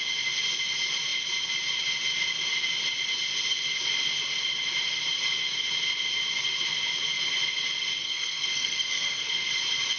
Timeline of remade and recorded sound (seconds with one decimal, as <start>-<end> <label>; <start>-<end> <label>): 0.0-8.0 recorded; 8.0-9.5 remade; 9.5-10.0 recorded